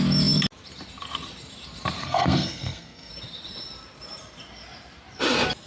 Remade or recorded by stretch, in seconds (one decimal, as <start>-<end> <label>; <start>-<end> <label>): 0.0-2.0 recorded; 2.0-3.1 remade; 3.1-5.7 recorded